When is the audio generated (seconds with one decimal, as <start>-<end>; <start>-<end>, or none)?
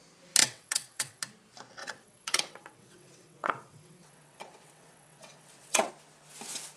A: 0.4-1.2; 1.8-5.9